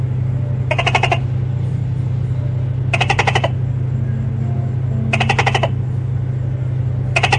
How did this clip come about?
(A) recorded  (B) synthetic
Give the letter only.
A